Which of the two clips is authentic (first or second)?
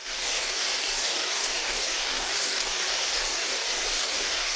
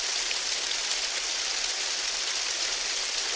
second